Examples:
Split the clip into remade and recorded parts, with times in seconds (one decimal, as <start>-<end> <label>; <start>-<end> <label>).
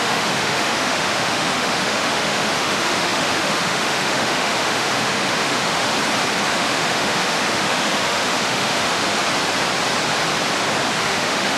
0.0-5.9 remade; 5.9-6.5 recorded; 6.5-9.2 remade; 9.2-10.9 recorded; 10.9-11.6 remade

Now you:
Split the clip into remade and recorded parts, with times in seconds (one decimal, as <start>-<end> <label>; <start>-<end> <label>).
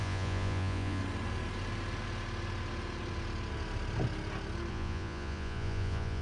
0.0-1.0 remade; 1.0-4.7 recorded; 4.7-6.2 remade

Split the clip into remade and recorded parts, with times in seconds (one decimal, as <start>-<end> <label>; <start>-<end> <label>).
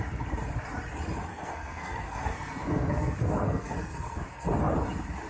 0.0-1.3 recorded; 1.3-4.5 remade; 4.5-5.3 recorded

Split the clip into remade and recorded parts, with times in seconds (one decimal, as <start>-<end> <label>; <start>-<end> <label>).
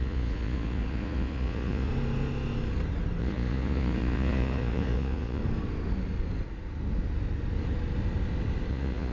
0.0-1.9 remade; 1.9-3.2 recorded; 3.2-5.4 remade; 5.4-8.7 recorded; 8.7-9.1 remade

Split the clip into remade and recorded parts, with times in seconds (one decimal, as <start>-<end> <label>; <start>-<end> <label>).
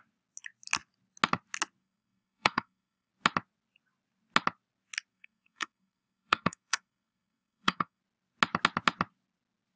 0.0-1.8 recorded; 1.8-3.1 remade; 3.1-5.1 recorded; 5.1-8.0 remade; 8.0-9.8 recorded